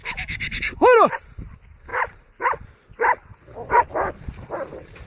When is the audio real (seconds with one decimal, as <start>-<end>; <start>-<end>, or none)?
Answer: 1.1-5.1